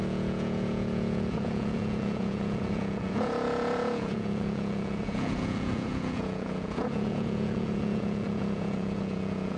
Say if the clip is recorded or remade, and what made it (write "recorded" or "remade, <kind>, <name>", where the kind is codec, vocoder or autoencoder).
remade, vocoder, Vocos